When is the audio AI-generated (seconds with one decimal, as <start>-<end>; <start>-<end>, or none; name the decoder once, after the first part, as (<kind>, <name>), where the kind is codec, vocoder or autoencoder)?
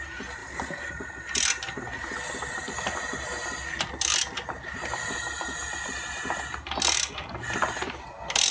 0.4-1.1 (vocoder, BigVGAN v2)